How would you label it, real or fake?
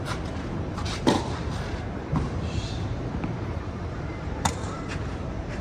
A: fake